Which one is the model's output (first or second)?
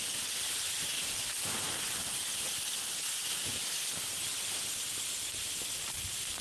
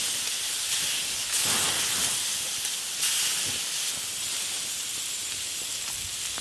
first